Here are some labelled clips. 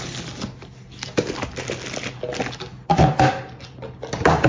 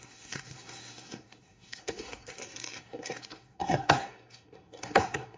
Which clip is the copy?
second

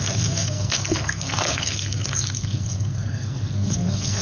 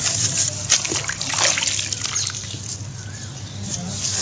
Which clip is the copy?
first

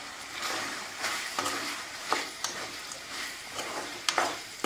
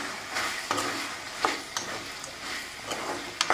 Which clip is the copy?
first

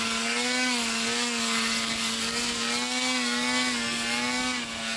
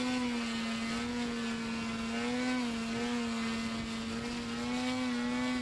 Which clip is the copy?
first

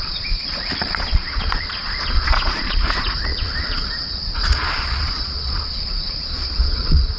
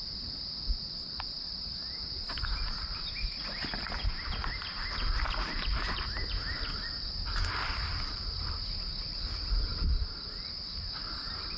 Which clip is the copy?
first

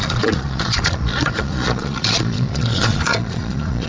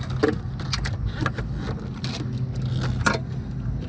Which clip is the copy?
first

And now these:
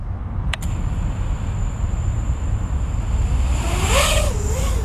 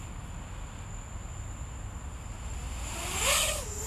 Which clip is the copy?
first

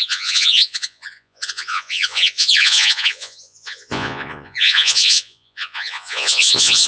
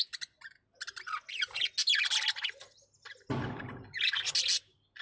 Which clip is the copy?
first